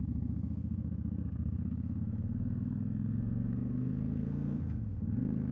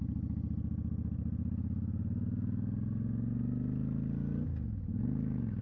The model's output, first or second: first